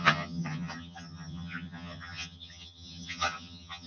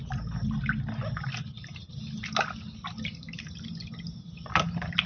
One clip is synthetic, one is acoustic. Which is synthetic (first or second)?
first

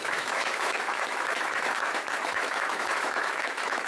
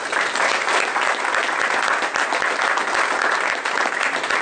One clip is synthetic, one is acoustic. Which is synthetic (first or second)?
first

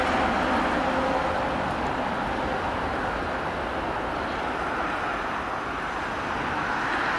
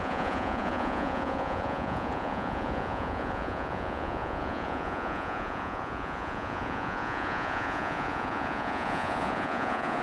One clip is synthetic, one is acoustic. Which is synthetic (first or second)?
second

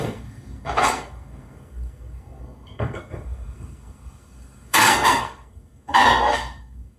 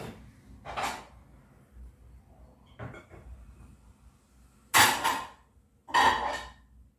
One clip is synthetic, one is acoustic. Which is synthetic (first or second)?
first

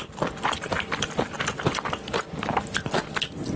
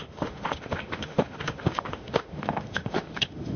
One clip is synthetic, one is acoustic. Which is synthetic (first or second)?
second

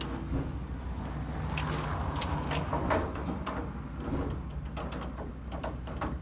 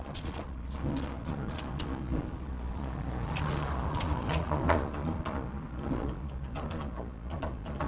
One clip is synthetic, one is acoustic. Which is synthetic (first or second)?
second